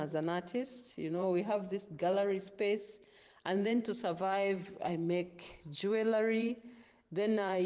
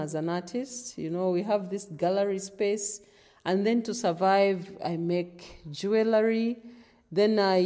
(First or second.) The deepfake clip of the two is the first